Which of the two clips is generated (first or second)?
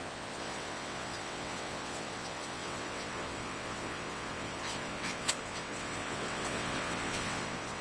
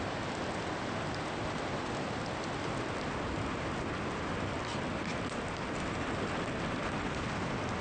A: first